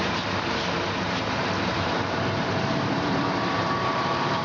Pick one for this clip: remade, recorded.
remade